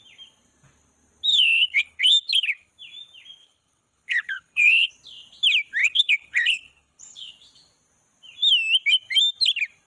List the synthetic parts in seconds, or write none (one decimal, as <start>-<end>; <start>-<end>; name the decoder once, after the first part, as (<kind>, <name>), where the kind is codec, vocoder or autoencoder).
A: 1.3-2.7 (codec, HILCodec); 3.4-4.9; 5.8-7.3

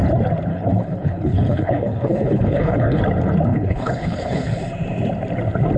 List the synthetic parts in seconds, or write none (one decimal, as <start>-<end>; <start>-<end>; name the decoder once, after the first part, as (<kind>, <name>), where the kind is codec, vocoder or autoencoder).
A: 0.5-3.0 (codec, HILCodec); 3.5-4.6

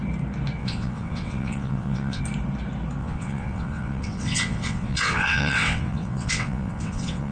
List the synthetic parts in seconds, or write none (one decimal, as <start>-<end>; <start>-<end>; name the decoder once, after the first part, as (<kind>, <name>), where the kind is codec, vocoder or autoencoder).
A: 0.6-2.2 (vocoder, WaveNeXt); 3.0-7.3